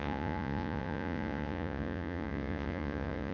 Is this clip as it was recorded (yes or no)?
no